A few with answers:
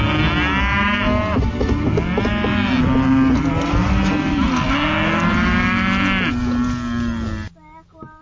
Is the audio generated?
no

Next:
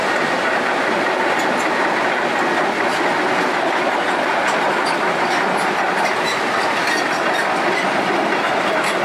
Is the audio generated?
no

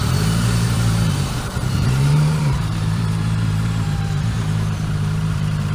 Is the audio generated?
yes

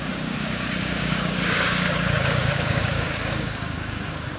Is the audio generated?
yes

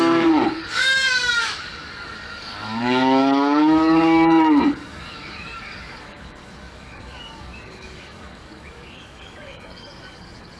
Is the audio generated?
yes